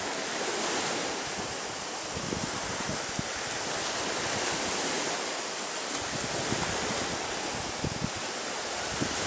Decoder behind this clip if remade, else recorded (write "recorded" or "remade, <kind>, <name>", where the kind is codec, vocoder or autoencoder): recorded